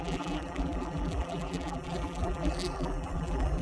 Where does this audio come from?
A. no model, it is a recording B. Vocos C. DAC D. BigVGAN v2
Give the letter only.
D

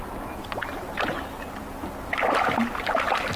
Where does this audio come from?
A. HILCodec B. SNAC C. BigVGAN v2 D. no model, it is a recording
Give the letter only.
D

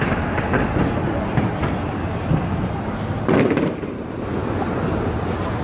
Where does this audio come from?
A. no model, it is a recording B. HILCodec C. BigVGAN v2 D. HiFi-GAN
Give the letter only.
A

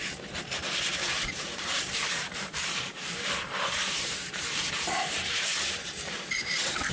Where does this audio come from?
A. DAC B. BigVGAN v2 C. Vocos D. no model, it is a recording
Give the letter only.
B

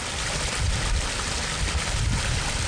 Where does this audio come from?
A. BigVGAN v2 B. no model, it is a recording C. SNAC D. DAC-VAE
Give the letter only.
A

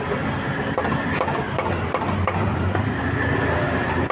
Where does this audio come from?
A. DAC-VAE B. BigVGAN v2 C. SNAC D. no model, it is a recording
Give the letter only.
D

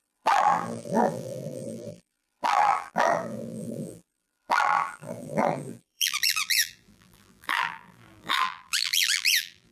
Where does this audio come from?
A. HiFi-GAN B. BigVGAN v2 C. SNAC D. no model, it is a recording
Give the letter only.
B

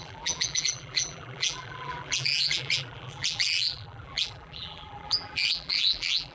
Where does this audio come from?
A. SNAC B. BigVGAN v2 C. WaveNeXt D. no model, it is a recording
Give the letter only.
B